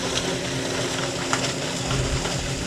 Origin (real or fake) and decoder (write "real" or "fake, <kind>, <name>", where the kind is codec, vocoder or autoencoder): real